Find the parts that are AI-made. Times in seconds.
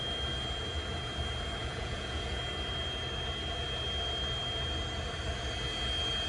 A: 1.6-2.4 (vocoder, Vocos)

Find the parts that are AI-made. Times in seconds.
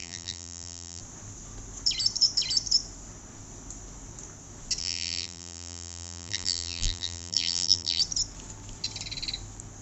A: 0.0-1.0 (vocoder, BigVGAN v2); 4.8-8.0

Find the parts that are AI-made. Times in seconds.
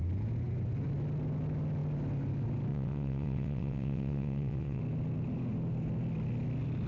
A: 2.7-4.8 (vocoder, WaveNeXt)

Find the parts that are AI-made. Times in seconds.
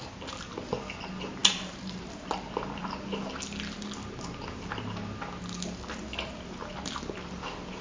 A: none